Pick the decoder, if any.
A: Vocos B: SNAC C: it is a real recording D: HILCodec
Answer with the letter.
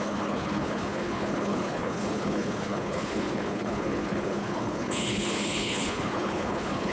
D